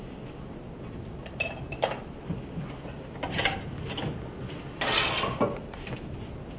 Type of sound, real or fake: real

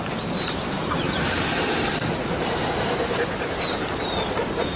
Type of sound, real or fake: fake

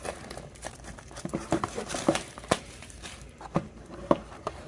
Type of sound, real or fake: fake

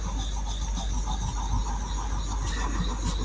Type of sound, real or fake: real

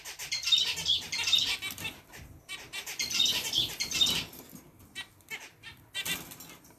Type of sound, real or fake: fake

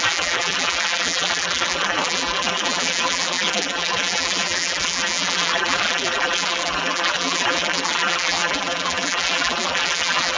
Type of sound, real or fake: fake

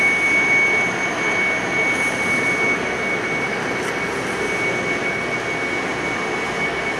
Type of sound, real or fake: real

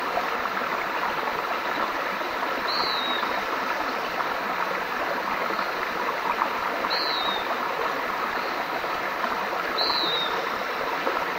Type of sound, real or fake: real